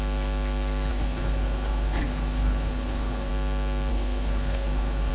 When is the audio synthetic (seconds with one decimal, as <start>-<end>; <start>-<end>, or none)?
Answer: 0.9-3.3; 3.9-5.1